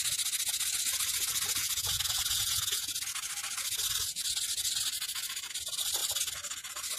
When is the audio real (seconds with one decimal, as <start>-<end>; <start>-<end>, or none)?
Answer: 0.0-1.6; 3.0-7.0